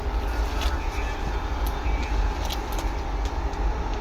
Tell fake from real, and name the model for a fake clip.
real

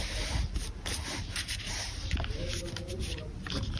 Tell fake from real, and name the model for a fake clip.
real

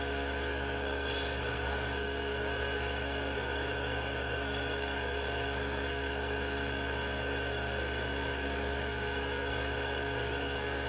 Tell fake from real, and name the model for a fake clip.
fake, codec, SNAC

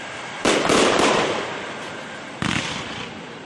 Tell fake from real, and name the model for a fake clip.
fake, vocoder, BigVGAN v2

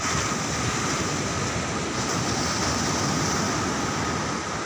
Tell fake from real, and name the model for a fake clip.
real